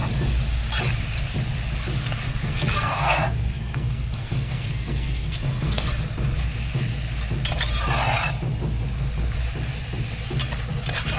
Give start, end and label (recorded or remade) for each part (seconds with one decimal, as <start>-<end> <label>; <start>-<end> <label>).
0.0-2.3 recorded; 2.3-5.9 remade; 5.9-11.2 recorded